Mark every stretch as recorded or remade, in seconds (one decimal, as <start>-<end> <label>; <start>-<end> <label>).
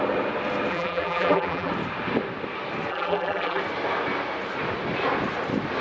0.0-0.7 recorded; 0.7-1.7 remade; 1.7-2.9 recorded; 2.9-3.6 remade; 3.6-5.8 recorded